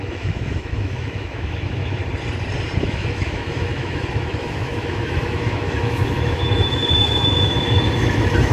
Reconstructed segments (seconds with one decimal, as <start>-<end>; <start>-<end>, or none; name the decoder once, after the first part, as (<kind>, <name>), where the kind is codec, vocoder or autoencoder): 0.0-2.0 (autoencoder, DAC-VAE); 2.8-8.5